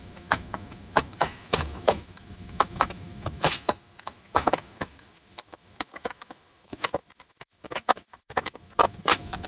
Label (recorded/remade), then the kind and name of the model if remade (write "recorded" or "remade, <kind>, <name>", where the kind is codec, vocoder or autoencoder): remade, autoencoder, DAC-VAE